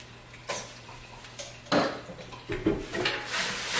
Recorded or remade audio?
recorded